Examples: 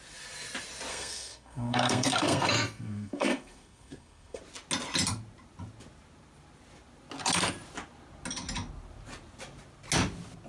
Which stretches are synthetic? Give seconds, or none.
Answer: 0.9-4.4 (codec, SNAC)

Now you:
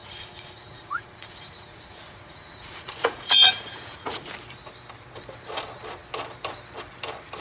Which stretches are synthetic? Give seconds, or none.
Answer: 0.0-4.3 (vocoder, Vocos)

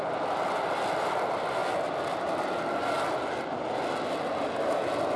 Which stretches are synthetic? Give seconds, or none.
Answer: none

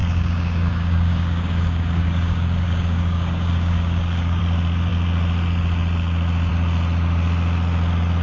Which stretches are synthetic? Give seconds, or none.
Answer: 0.0-4.4 (codec, DAC)

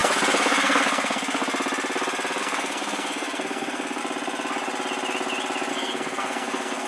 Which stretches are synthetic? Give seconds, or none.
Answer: 0.0-1.4 (codec, SNAC); 2.4-4.0; 5.7-6.9

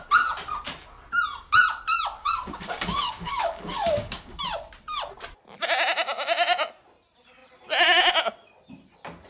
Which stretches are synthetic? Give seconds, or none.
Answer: 2.2-4.4 (codec, DAC)

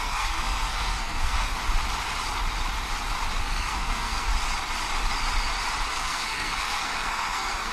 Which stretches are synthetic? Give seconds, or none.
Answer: 0.0-1.6 (codec, SNAC); 3.4-4.3; 5.9-7.7